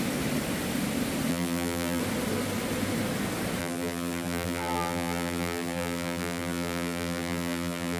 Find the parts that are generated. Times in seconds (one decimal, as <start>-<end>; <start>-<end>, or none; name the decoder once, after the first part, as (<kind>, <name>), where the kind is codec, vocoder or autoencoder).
1.3-2.0 (vocoder, BigVGAN v2); 3.6-8.0